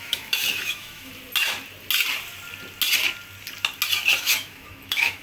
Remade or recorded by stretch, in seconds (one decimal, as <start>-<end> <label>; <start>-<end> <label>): 0.0-1.1 remade; 1.1-4.2 recorded; 4.2-5.2 remade